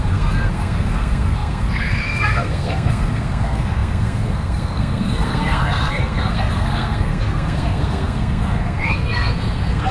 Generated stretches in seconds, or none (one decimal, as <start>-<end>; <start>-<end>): 0.0-9.9